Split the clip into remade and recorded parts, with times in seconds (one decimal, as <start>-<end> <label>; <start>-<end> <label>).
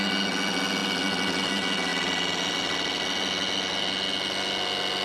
0.0-5.0 recorded